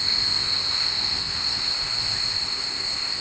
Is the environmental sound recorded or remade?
remade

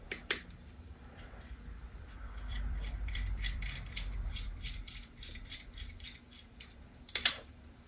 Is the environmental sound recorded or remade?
remade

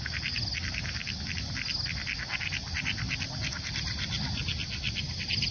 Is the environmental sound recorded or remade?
recorded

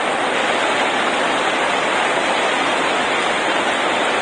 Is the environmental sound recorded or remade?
recorded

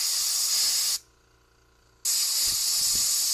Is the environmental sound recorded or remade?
recorded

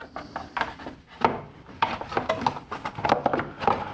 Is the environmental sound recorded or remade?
recorded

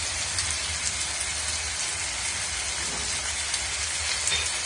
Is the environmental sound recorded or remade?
recorded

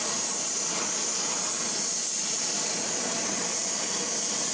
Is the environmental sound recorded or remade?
recorded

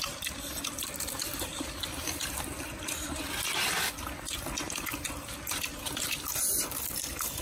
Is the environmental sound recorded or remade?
remade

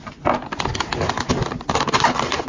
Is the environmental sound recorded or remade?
recorded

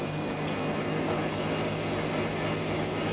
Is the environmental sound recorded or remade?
recorded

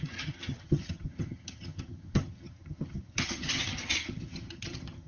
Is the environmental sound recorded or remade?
remade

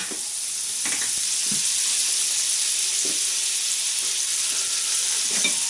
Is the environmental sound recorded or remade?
recorded